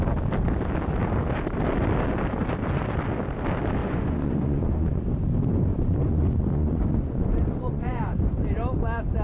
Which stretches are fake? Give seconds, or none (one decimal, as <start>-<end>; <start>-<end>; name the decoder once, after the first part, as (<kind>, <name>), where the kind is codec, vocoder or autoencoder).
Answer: 3.8-5.0 (vocoder, Vocos); 5.7-8.1